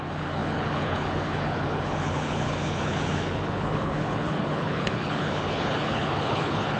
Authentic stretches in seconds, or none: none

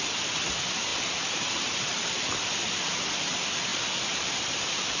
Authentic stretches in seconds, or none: 0.0-0.9; 2.1-3.7

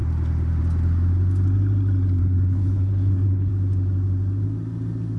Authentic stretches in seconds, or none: 0.0-2.2; 3.5-5.2

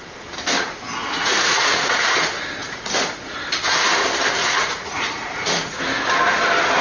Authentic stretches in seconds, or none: 0.0-1.0; 2.1-2.6; 3.4-4.4; 5.8-6.8

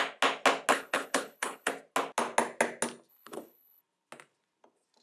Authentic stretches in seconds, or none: 0.0-0.7; 1.7-3.1; 3.8-5.0

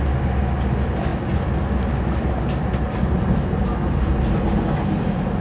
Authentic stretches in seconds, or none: 0.0-5.4

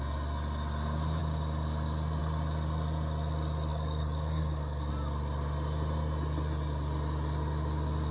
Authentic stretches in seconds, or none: 0.0-3.7; 4.9-8.1

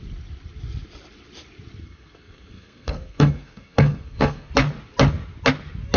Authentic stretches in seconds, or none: 0.0-1.8; 4.5-6.0